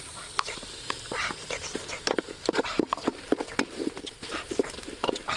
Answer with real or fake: fake